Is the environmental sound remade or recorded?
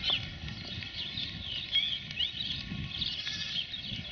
recorded